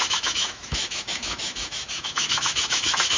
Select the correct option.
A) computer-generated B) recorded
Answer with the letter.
A